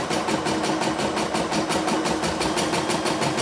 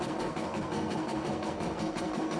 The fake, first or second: second